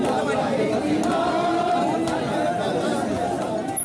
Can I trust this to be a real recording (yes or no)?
yes